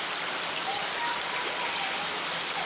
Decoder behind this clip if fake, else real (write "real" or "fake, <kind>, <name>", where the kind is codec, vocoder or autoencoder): real